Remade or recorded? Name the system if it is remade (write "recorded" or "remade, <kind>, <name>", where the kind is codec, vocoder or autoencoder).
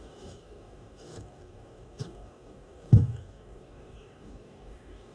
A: remade, codec, DAC